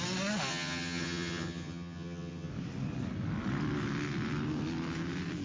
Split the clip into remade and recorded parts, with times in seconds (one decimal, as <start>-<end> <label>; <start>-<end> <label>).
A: 0.0-0.5 recorded; 0.5-2.5 remade; 2.5-5.4 recorded